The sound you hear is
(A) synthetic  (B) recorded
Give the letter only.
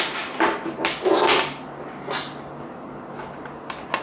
B